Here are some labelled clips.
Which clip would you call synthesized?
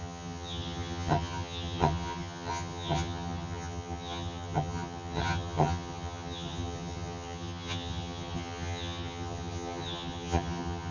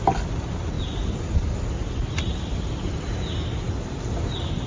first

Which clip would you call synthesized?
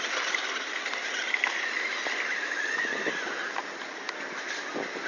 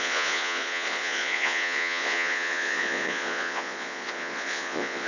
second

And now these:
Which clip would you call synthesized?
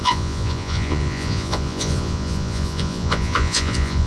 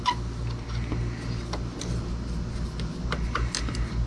first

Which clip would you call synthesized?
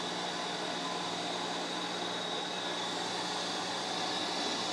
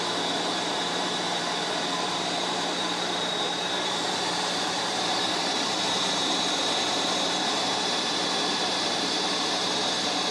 second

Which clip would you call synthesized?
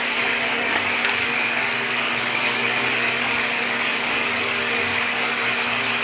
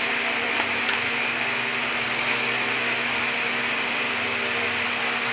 first